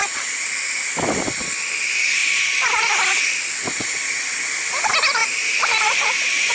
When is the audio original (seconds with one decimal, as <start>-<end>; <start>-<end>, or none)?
0.0-5.2